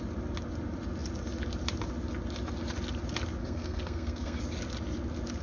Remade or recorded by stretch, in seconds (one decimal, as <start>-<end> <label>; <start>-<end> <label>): 0.0-3.4 recorded; 3.4-4.4 remade; 4.4-5.4 recorded